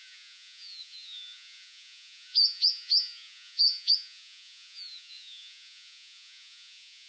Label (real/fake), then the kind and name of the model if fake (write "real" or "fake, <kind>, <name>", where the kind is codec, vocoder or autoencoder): fake, vocoder, Vocos